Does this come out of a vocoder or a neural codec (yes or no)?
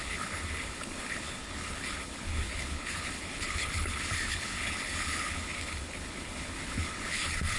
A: yes